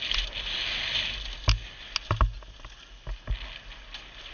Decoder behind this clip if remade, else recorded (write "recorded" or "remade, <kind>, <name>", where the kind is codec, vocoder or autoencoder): recorded